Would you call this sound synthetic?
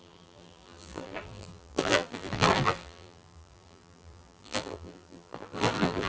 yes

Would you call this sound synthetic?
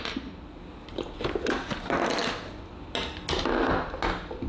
no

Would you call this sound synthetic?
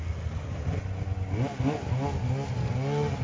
no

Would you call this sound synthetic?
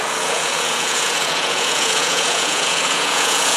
yes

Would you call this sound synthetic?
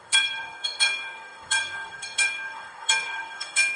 yes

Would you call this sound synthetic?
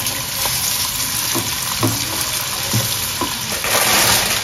no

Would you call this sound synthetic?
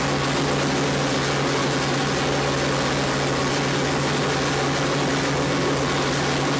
no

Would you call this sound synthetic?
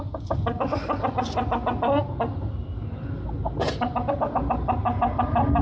no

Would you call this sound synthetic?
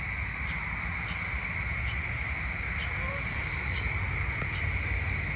no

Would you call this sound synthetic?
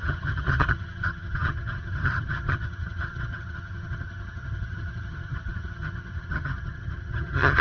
yes